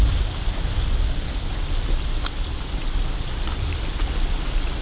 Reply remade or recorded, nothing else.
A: recorded